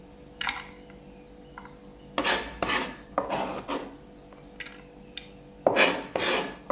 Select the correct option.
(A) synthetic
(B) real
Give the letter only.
B